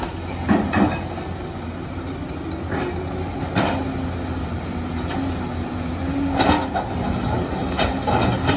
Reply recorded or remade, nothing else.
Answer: recorded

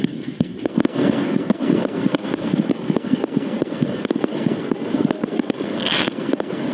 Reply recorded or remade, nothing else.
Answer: remade